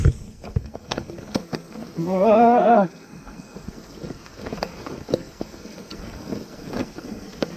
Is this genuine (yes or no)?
no